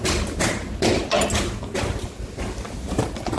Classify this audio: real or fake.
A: real